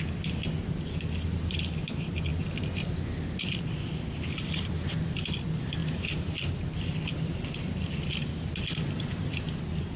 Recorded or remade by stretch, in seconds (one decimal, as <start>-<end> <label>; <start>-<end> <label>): 0.0-10.0 recorded